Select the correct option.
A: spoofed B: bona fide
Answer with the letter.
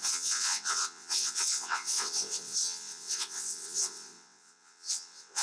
A